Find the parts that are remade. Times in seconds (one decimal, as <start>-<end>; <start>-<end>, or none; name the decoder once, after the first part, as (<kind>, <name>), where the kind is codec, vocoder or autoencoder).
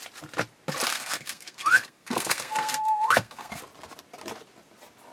0.9-3.6 (codec, SNAC)